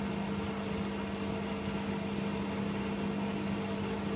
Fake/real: real